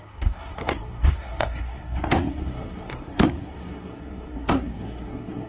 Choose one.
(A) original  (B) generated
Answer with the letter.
B